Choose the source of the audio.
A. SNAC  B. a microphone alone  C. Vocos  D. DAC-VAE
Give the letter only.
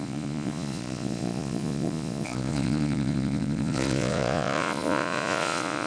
C